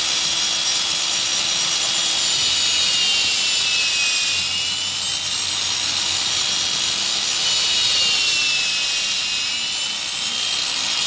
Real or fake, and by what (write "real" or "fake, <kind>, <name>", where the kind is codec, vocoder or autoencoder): real